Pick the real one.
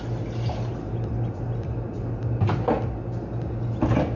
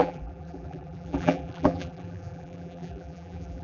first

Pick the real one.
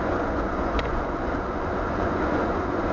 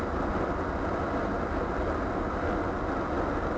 second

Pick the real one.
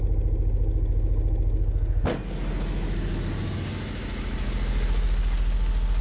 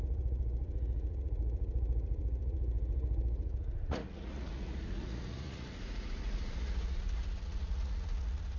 first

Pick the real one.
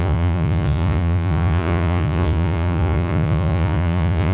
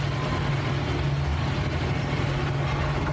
second